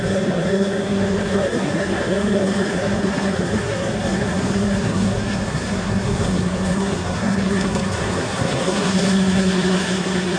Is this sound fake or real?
fake